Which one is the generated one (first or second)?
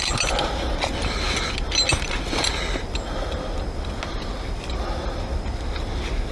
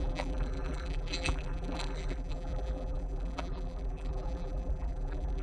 second